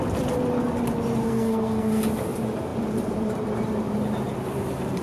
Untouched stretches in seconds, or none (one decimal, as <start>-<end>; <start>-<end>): 0.0-1.2; 2.0-5.0